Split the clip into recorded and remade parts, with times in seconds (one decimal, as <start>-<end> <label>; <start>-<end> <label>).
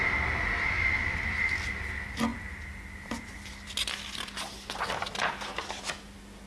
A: 0.0-6.5 recorded